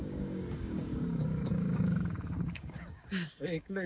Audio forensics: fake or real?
fake